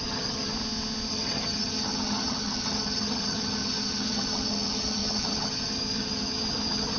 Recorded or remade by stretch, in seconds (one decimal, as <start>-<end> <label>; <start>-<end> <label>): 0.0-0.5 remade; 0.5-1.1 recorded; 1.1-7.0 remade